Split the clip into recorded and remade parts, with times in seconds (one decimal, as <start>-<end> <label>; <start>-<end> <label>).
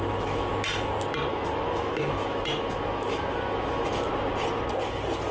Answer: 0.0-0.5 remade; 0.5-1.3 recorded; 1.3-4.1 remade; 4.1-5.3 recorded